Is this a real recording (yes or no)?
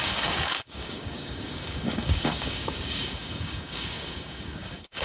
no